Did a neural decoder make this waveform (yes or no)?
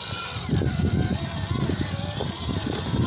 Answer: no